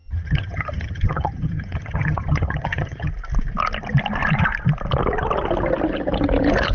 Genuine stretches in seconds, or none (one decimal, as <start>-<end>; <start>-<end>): 3.1-6.7